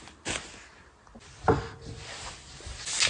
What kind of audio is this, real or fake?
real